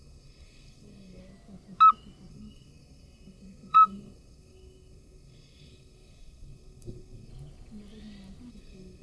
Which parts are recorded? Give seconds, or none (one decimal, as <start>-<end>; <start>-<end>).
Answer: 1.2-2.3; 7.3-8.5